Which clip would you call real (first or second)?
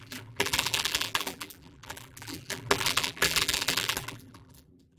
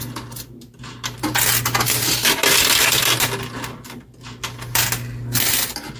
second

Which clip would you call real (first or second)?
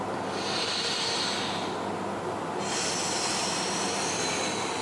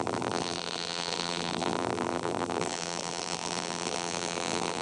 first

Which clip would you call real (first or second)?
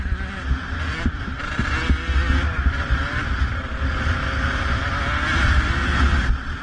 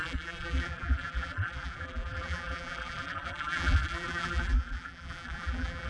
first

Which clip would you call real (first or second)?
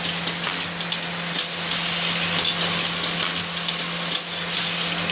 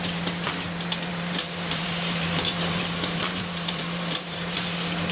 first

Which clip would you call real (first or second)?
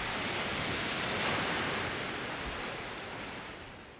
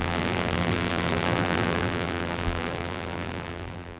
first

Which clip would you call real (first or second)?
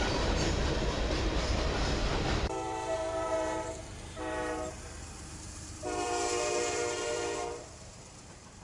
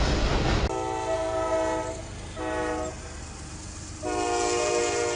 second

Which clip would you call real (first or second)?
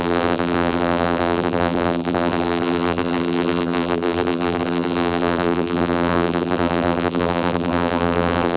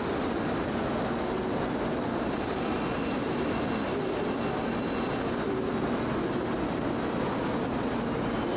second